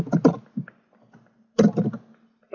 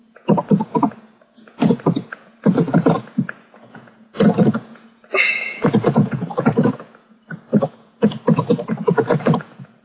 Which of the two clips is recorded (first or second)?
first